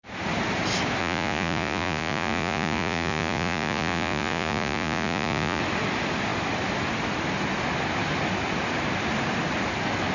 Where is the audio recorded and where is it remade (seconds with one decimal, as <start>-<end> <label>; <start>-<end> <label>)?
0.0-1.0 recorded; 1.0-5.6 remade; 5.6-10.1 recorded